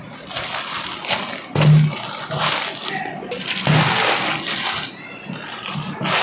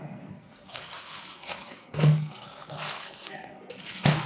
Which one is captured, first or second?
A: first